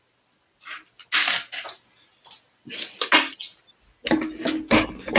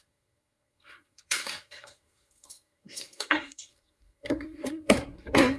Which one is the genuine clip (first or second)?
first